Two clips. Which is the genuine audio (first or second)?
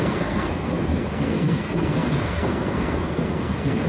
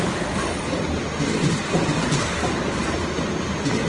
second